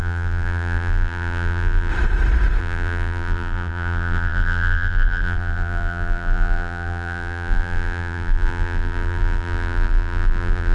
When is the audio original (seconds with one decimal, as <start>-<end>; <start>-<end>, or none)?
1.9-2.6